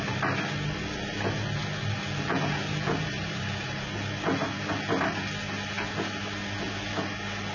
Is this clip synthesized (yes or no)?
no